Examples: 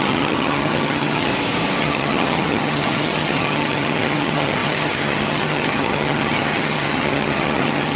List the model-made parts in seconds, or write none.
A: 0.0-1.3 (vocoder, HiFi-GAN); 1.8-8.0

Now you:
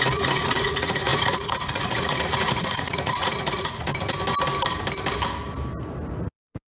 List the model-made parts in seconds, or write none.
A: 0.0-3.9 (vocoder, Vocos); 6.1-6.8

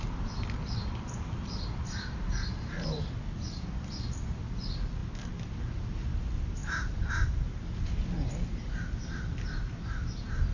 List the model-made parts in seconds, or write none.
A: none

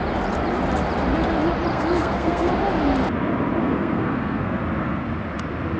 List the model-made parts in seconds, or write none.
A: 1.7-2.5 (codec, SNAC); 3.6-4.6

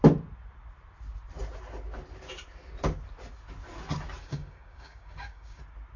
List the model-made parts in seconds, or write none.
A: 4.2-5.6 (codec, DAC)

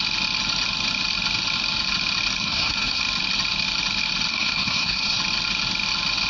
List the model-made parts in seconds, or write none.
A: 2.4-3.0 (codec, SNAC); 4.3-5.2

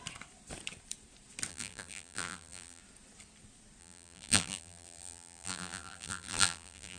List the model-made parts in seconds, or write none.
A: 1.5-2.8 (vocoder, BigVGAN v2); 3.8-7.0